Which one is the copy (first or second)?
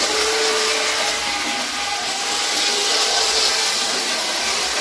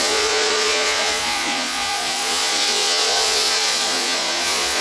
second